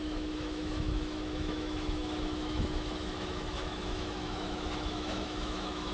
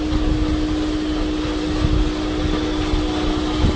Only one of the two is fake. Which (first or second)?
first